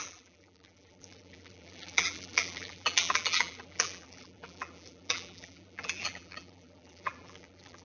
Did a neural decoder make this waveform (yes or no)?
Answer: yes